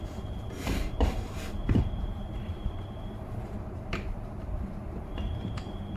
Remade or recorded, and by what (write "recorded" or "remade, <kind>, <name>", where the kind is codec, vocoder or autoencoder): remade, vocoder, BigVGAN v2